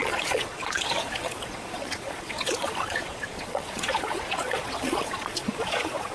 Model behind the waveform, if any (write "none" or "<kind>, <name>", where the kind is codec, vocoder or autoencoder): vocoder, Vocos